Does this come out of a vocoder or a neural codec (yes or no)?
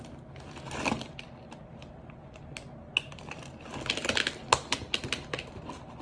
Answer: no